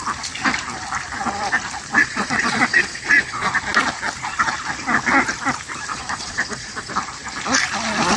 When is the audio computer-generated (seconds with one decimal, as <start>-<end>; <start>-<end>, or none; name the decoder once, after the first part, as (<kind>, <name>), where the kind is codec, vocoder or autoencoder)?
2.0-3.5 (vocoder, Vocos); 5.9-6.9